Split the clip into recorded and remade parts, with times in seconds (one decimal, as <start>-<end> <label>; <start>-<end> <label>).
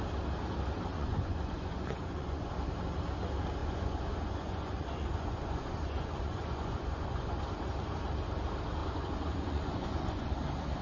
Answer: 0.0-0.9 recorded; 0.9-2.5 remade; 2.5-3.6 recorded; 3.6-7.4 remade; 7.4-8.8 recorded; 8.8-10.3 remade; 10.3-10.8 recorded